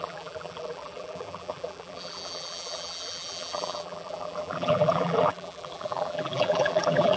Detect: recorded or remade remade